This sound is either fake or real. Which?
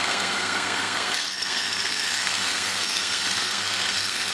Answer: fake